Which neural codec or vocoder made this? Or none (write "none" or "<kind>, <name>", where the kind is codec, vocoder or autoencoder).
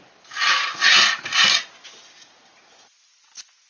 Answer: none